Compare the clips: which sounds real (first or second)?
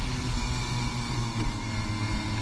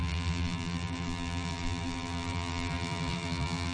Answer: first